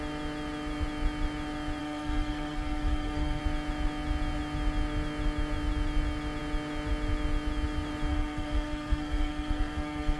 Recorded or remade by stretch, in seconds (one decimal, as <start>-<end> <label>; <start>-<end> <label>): 0.0-1.8 recorded; 1.8-3.4 remade; 3.4-8.1 recorded; 8.1-10.2 remade

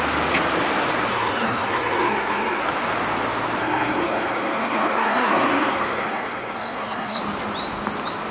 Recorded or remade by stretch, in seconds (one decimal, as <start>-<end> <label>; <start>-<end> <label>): 0.0-1.1 recorded; 1.1-2.6 remade; 2.6-3.6 recorded; 3.6-7.2 remade; 7.2-8.3 recorded

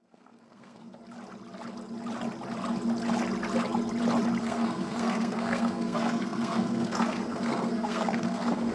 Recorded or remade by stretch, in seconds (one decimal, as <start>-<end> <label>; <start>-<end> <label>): 0.0-1.0 remade; 1.0-4.4 recorded; 4.4-8.7 remade